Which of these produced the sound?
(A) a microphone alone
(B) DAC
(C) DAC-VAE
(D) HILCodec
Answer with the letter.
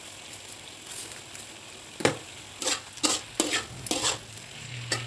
A